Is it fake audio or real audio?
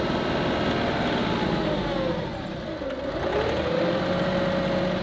real